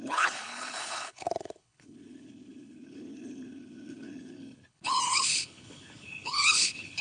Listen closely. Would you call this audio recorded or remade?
remade